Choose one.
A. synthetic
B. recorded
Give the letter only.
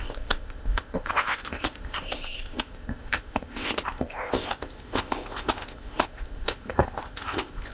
A